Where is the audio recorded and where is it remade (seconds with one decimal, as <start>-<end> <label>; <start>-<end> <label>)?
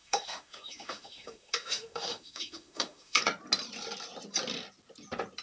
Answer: 0.0-3.2 remade; 3.2-5.4 recorded